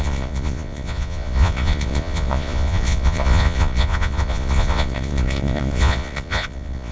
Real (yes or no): no